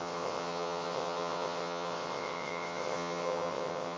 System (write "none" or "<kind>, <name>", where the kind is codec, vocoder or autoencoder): vocoder, WaveNeXt